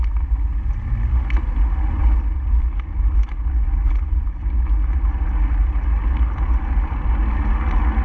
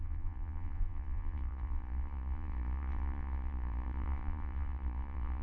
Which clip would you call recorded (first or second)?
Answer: first